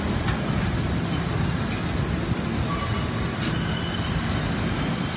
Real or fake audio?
real